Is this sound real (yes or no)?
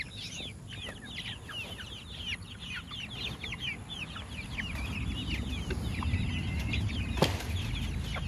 yes